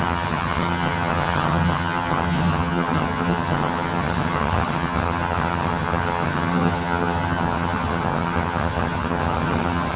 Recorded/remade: remade